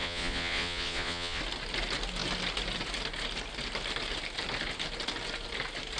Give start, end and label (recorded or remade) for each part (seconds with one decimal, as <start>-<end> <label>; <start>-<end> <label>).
0.0-1.4 remade; 1.4-6.0 recorded